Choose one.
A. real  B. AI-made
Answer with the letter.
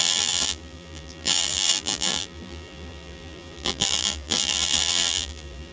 B